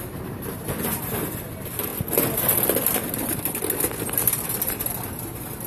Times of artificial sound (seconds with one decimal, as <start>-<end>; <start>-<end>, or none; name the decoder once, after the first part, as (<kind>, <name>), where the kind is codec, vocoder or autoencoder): none